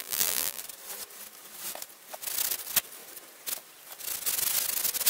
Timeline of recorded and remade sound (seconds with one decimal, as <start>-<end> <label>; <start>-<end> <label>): 0.0-0.6 remade; 0.6-5.1 recorded